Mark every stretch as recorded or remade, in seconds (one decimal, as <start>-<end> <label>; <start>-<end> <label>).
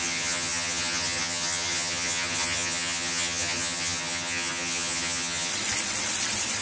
0.0-5.5 remade; 5.5-6.6 recorded